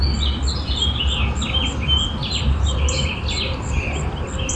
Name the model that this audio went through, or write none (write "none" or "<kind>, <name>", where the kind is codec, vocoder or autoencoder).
none